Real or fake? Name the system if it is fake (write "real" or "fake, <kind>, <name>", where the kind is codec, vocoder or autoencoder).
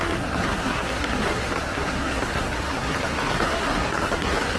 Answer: fake, codec, SNAC